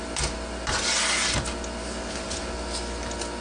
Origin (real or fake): real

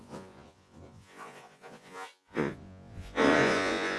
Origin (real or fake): fake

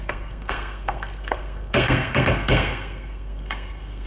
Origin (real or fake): fake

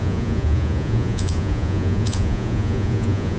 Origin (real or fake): fake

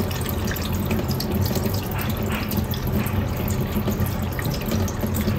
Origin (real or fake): real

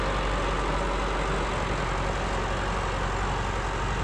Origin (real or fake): real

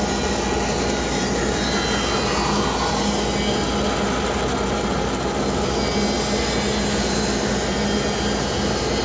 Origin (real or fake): real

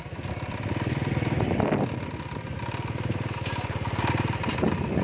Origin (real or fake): real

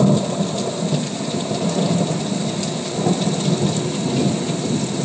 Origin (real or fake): real